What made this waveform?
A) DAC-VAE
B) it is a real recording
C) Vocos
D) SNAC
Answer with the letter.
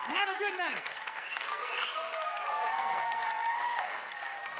D